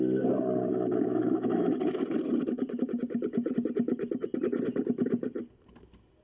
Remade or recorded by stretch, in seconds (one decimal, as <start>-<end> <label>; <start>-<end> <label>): 0.0-0.7 recorded; 0.7-1.8 remade; 1.8-6.2 recorded